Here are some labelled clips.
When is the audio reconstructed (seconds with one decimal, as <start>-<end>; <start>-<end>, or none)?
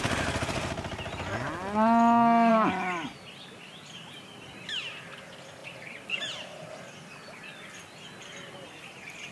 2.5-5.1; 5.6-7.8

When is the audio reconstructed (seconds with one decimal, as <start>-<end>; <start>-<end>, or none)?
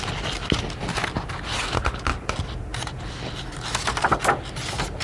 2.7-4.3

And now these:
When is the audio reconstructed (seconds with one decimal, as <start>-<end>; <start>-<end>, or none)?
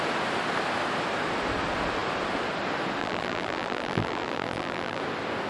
3.0-5.0